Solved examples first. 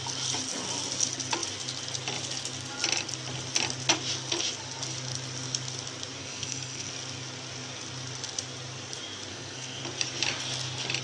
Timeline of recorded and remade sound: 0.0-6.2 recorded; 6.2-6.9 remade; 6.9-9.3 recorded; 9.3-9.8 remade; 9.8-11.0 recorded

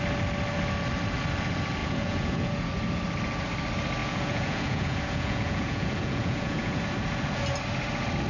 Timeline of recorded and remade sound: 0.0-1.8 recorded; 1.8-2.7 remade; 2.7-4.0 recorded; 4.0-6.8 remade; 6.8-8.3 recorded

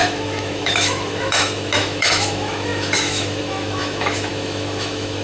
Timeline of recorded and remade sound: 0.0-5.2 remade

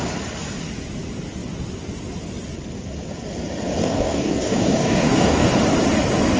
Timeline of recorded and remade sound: 0.0-3.8 recorded; 3.8-5.5 remade; 5.5-6.4 recorded